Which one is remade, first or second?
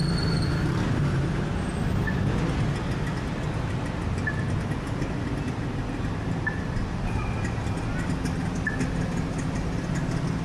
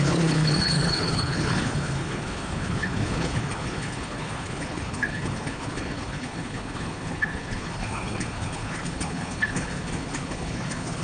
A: second